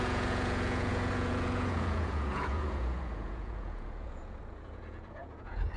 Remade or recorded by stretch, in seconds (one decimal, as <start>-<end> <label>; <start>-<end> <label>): 0.0-5.8 remade